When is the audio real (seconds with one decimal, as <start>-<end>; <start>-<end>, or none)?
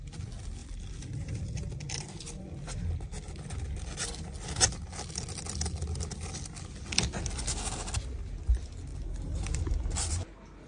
0.0-0.6; 3.3-8.9; 10.1-10.7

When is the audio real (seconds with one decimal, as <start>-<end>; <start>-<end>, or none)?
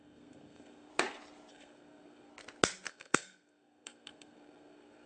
0.9-1.5; 2.3-2.9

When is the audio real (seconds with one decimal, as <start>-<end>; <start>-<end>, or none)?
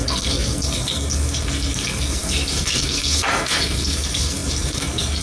none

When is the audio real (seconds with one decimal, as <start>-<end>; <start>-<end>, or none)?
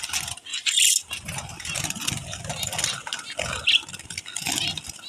0.0-5.1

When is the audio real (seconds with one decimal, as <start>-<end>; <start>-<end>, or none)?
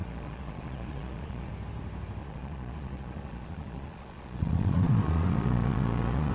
1.5-2.2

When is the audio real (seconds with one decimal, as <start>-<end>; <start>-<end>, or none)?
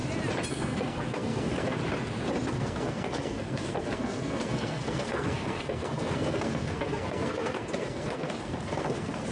0.0-0.5; 1.8-2.5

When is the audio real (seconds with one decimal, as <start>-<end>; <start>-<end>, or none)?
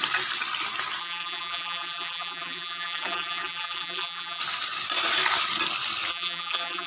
0.0-1.0; 4.4-6.1